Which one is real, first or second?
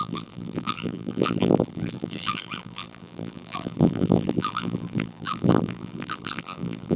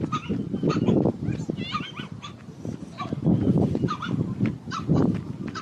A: second